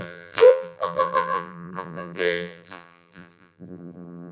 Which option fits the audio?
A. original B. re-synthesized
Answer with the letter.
B